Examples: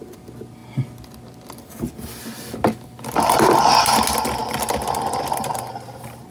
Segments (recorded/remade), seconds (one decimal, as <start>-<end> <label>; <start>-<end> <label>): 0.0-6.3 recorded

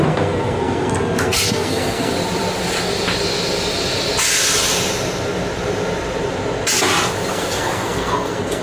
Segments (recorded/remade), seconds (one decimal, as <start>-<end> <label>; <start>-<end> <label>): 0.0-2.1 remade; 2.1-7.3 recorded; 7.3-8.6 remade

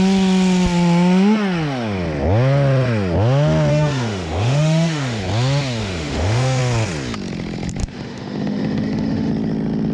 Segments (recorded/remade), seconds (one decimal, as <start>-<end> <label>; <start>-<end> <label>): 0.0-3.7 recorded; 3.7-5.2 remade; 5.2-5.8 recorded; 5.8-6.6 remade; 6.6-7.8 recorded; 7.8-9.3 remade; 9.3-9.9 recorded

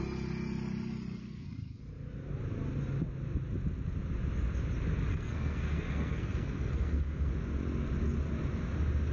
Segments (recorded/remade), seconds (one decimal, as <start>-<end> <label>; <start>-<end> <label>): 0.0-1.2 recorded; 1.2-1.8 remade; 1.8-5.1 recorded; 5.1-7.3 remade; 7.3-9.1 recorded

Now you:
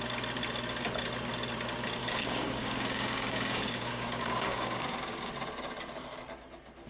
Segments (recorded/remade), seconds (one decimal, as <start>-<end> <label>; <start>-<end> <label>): 0.0-2.0 recorded; 2.0-5.3 remade; 5.3-6.9 recorded

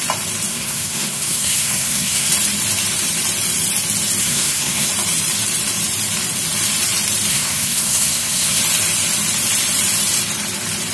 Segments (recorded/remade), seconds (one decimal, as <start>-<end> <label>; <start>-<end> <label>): 0.0-0.5 recorded; 0.5-2.3 remade; 2.3-4.2 recorded; 4.2-4.9 remade; 4.9-7.3 recorded; 7.3-8.6 remade; 8.6-10.9 recorded

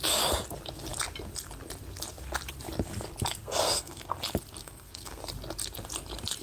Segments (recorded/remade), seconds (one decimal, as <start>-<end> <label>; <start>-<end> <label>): 0.0-3.4 recorded; 3.4-4.0 remade; 4.0-4.6 recorded; 4.6-5.2 remade; 5.2-6.4 recorded